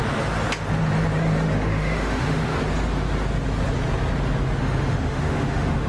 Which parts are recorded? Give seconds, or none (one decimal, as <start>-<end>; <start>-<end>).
0.0-1.5; 2.5-4.6